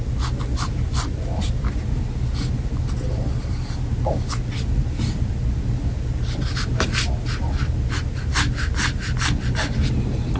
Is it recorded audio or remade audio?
recorded